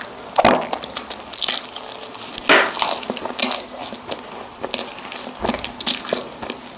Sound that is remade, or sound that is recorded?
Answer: recorded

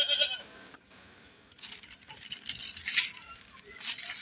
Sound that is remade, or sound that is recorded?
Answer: recorded